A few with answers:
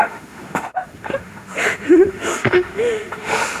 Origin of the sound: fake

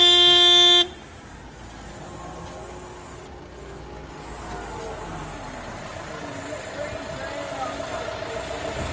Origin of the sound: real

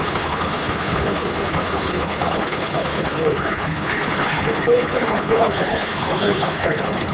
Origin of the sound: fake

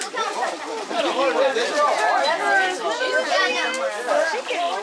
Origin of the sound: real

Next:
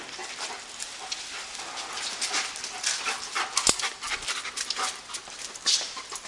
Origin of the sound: real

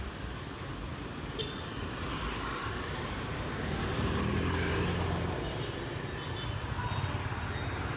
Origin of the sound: real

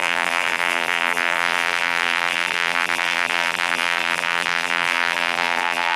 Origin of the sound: fake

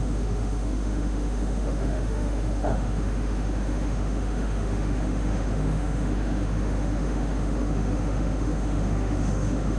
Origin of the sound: fake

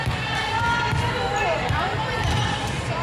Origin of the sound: real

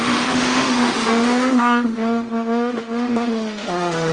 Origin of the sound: fake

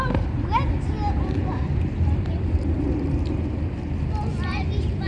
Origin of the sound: real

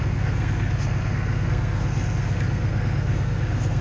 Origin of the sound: fake